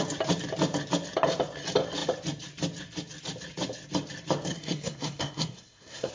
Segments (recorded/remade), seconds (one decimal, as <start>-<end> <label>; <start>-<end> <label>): 0.0-4.5 recorded; 4.5-6.1 remade